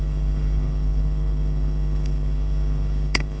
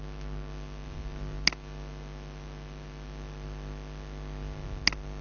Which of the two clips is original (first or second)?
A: second